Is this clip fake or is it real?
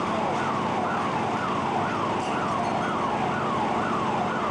real